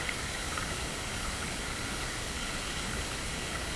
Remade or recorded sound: remade